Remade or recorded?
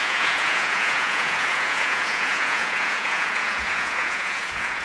remade